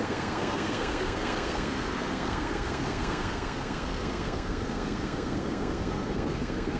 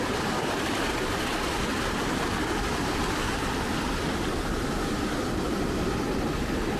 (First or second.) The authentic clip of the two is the second